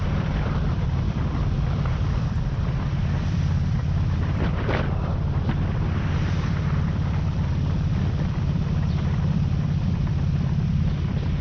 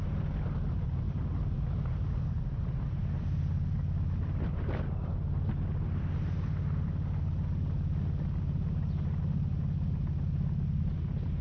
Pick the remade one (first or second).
first